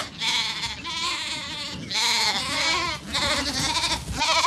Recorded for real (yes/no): yes